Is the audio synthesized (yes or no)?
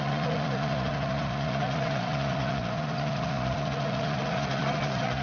yes